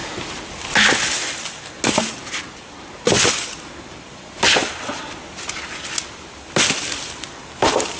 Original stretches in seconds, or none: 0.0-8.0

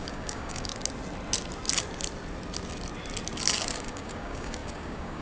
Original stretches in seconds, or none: 0.7-3.8

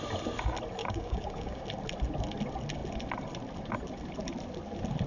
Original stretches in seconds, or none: 0.0-0.8; 1.6-5.1

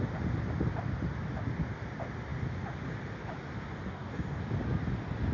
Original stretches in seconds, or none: 0.0-3.9; 4.4-5.3

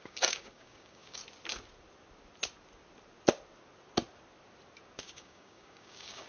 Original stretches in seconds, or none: 1.2-5.0

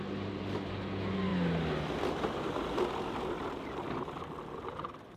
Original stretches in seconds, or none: 0.0-5.2